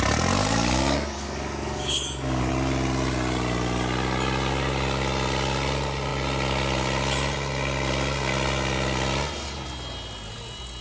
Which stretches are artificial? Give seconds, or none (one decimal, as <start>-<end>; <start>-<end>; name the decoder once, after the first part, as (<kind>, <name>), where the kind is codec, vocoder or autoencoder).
0.4-2.5 (codec, DAC)